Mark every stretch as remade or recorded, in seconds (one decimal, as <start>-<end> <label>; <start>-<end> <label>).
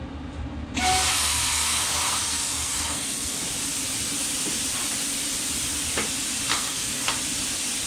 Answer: 0.0-1.1 recorded; 1.1-3.4 remade; 3.4-6.5 recorded; 6.5-7.1 remade; 7.1-7.9 recorded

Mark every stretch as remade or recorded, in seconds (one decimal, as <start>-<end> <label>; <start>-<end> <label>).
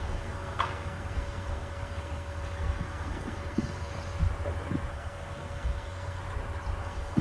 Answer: 0.0-3.9 remade; 3.9-4.9 recorded; 4.9-6.2 remade; 6.2-6.8 recorded; 6.8-7.2 remade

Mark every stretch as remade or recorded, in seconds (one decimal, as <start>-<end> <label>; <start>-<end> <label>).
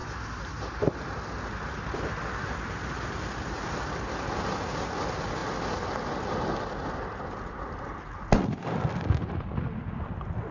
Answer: 0.0-10.5 recorded